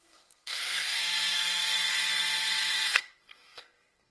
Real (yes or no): no